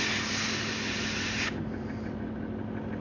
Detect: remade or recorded recorded